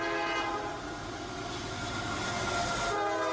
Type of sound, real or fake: real